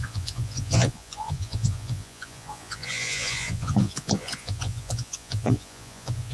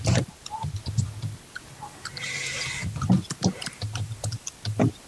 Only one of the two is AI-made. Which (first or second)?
first